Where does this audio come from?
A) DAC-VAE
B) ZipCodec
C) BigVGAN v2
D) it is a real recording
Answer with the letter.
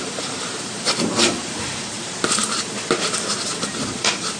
C